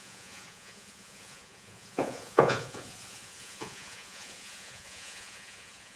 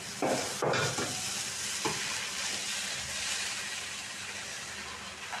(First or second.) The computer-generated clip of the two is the first